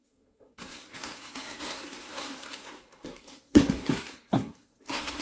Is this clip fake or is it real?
fake